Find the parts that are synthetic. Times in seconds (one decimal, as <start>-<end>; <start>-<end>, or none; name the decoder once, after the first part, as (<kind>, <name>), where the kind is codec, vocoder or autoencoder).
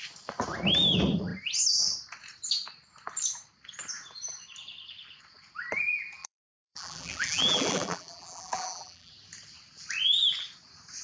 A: 6.2-9.1 (vocoder, BigVGAN v2)